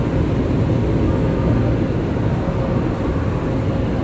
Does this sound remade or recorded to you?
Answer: recorded